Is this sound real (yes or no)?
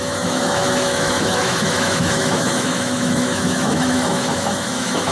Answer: no